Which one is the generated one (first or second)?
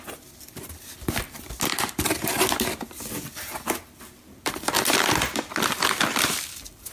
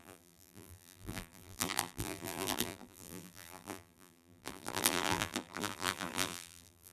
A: second